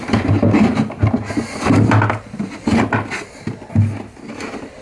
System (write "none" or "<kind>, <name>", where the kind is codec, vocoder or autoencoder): none